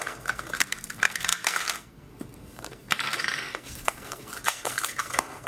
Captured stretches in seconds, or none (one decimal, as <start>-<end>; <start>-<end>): none